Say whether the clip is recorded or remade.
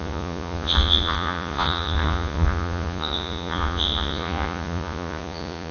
remade